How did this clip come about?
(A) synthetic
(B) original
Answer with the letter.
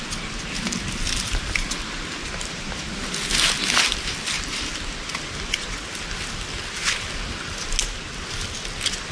B